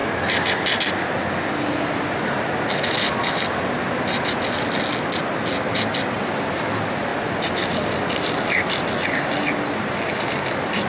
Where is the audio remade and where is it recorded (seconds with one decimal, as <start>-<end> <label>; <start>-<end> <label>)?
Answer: 0.0-10.9 recorded